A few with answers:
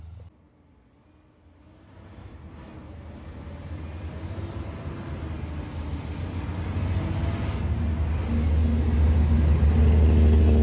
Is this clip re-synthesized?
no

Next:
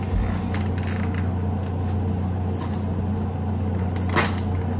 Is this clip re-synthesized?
no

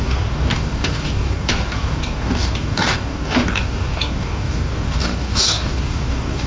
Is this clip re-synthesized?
yes